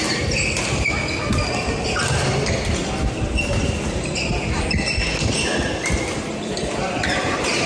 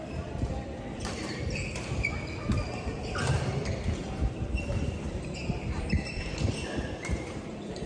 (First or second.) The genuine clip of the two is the first